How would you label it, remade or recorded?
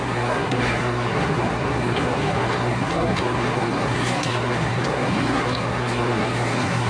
remade